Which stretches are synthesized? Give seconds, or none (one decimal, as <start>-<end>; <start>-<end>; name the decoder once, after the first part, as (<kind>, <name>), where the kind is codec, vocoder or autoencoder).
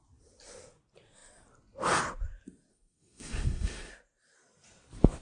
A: 2.7-3.9 (codec, SNAC)